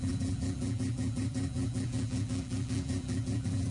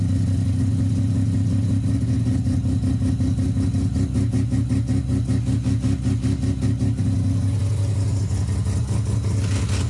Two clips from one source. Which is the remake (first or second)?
first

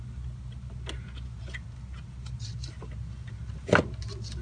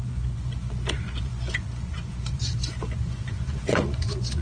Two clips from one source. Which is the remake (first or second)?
second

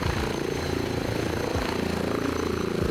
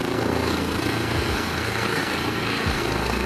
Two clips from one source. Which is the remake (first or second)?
second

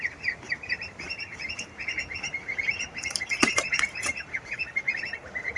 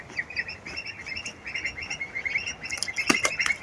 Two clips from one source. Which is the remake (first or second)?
first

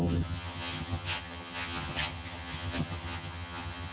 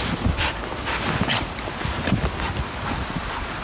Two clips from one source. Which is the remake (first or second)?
first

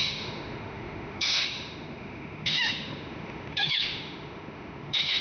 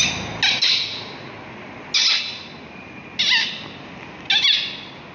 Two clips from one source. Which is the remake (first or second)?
first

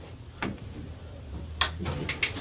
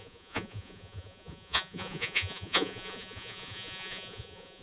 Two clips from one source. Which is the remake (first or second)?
second